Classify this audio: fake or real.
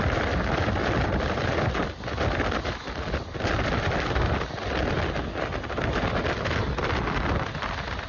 real